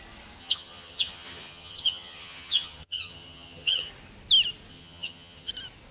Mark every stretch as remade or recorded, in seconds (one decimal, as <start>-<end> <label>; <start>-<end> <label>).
0.0-0.4 recorded; 0.4-3.9 remade; 3.9-4.7 recorded; 4.7-5.5 remade; 5.5-5.9 recorded

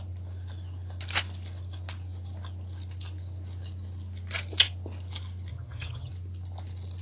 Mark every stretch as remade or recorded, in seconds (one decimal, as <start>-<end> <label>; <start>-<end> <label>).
0.0-5.5 recorded; 5.5-6.1 remade; 6.1-7.0 recorded

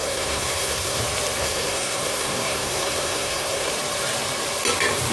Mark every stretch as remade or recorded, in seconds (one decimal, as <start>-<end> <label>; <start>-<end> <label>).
0.0-1.0 remade; 1.0-1.4 recorded; 1.4-3.7 remade; 3.7-5.1 recorded